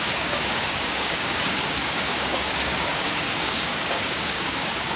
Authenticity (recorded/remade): remade